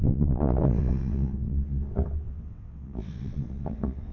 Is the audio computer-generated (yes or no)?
yes